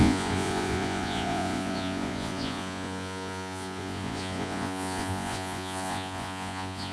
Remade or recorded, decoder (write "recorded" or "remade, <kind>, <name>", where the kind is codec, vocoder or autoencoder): remade, vocoder, Vocos